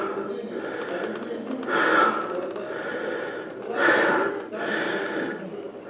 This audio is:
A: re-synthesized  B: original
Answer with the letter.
B